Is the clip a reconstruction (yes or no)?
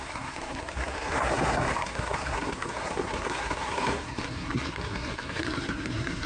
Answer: yes